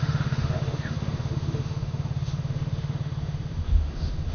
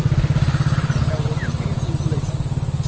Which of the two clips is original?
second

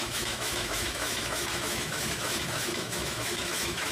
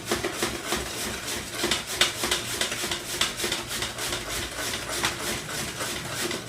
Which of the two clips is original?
second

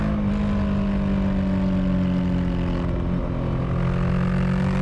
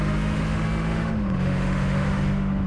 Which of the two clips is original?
first